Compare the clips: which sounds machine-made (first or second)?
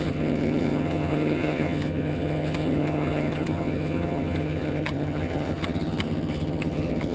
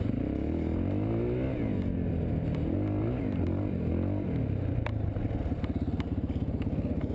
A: first